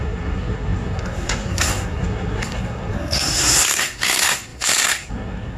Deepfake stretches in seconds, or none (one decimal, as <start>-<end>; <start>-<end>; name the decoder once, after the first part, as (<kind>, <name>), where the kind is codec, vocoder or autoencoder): 0.0-5.6 (codec, SNAC)